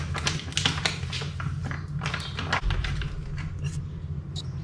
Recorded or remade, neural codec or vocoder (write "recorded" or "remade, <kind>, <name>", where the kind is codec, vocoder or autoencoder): recorded